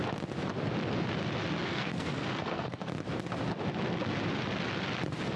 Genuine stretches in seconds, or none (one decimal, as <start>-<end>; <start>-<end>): 0.0-1.6; 2.9-5.4